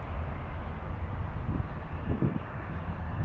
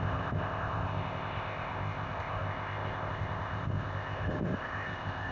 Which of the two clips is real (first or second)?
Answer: first